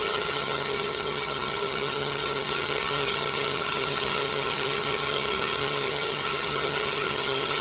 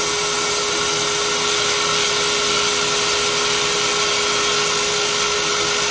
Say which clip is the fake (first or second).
first